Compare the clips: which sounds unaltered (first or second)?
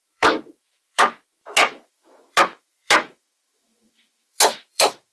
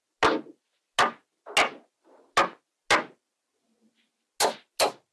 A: second